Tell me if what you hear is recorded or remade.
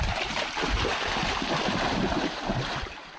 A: recorded